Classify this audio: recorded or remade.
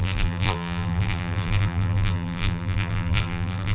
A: remade